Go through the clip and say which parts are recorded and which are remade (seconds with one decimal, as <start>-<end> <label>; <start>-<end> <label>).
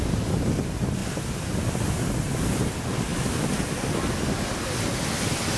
0.0-5.6 recorded